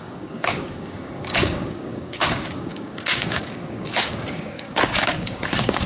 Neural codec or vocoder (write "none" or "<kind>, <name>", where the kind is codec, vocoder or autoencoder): codec, DAC